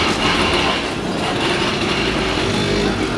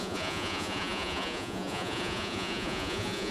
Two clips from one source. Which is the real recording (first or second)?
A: first